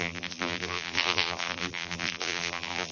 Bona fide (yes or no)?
no